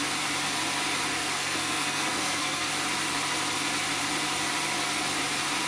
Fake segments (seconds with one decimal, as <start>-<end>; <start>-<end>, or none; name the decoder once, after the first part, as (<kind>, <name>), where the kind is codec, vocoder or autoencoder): 1.1-2.7 (codec, SNAC)